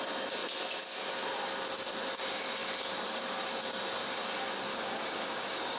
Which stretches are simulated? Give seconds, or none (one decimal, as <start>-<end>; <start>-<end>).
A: 4.7-5.8